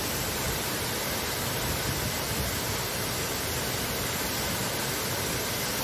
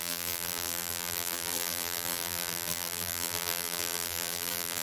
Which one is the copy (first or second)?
second